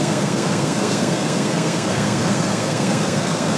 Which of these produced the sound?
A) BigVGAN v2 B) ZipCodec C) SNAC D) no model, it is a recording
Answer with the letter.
C